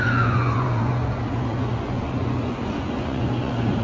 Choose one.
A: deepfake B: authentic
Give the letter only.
A